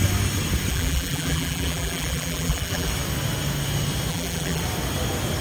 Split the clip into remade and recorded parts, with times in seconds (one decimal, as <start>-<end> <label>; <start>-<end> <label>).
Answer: 0.0-0.7 recorded; 0.7-2.9 remade; 2.9-4.1 recorded; 4.1-4.6 remade; 4.6-5.4 recorded